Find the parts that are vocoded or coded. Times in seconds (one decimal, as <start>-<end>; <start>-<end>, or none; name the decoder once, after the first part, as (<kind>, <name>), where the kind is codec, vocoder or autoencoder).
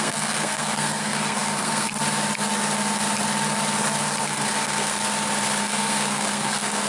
0.0-2.0 (codec, SNAC); 4.2-5.0; 5.6-6.9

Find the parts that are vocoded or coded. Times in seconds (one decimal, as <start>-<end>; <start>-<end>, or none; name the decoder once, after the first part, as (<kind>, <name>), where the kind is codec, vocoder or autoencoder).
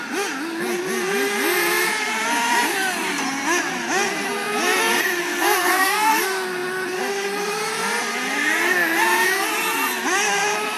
5.2-6.1 (codec, SNAC)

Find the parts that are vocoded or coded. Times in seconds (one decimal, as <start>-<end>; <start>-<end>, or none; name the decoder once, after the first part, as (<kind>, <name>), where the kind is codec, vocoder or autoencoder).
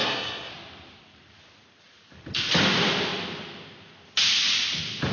0.0-0.5 (codec, SNAC)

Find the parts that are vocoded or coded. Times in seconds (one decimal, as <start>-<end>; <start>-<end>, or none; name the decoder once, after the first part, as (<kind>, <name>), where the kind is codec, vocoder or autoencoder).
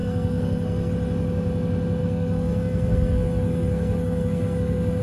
0.0-0.9 (codec, SNAC); 2.0-5.0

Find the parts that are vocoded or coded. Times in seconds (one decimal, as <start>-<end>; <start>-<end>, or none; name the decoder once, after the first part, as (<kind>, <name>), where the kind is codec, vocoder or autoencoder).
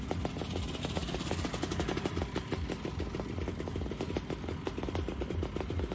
none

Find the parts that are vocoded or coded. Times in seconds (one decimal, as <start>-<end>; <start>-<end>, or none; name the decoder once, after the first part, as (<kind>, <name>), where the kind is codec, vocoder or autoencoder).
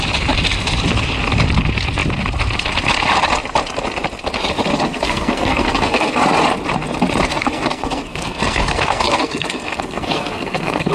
4.7-6.2 (codec, SNAC); 7.3-10.9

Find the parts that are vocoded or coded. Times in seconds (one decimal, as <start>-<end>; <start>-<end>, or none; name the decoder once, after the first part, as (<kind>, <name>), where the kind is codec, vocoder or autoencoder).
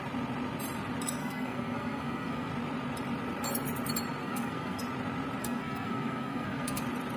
1.2-2.5 (codec, SNAC); 4.2-4.8; 5.4-6.8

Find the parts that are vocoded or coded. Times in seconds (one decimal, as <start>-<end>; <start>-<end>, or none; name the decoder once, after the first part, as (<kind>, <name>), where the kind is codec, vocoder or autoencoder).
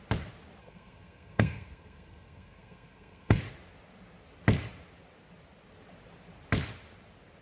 0.6-3.4 (codec, SNAC)